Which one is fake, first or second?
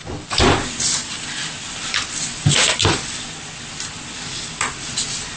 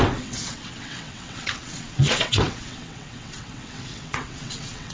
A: second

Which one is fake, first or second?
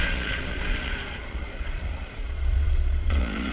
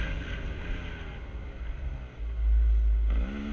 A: first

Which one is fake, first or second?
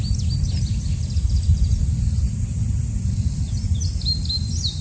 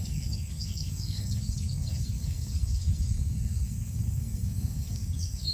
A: second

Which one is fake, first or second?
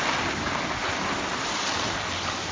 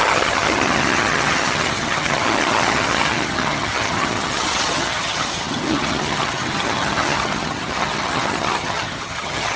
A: second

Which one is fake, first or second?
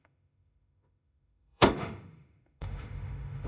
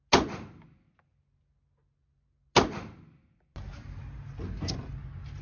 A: first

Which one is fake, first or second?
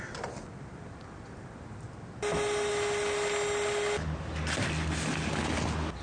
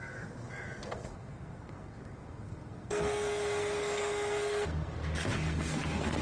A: second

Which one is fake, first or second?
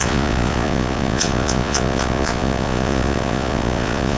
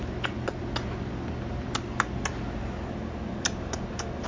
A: first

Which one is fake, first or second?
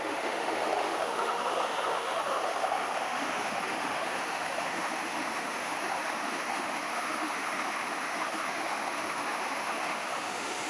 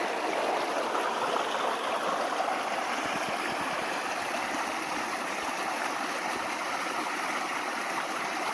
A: first